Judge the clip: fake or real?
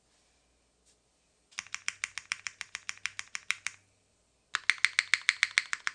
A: real